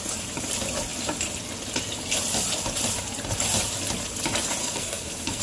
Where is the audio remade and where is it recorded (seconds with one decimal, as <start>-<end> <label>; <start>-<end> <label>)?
0.0-4.6 recorded; 4.6-5.4 remade